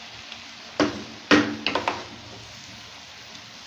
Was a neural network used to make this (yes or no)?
no